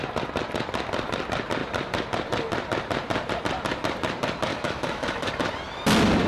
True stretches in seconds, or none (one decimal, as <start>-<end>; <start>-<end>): 0.0-4.5; 5.3-6.3

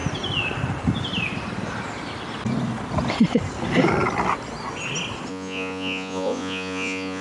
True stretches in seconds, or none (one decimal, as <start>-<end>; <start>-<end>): 0.0-5.3

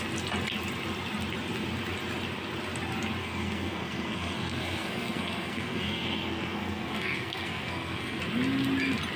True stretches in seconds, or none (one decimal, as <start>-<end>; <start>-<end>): 0.0-3.2; 8.2-9.2

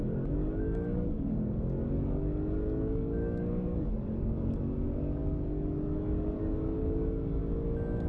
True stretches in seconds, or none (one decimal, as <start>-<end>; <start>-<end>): 7.4-8.1

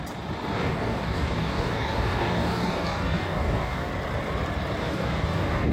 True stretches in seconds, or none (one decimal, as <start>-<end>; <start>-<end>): 0.0-0.5; 3.9-4.8

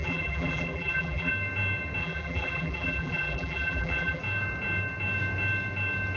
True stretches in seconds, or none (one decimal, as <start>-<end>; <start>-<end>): 1.3-2.0; 4.2-6.2